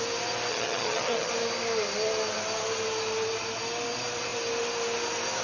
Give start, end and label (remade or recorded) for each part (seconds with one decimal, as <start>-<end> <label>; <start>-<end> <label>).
0.0-0.5 recorded; 0.5-1.3 remade; 1.3-5.4 recorded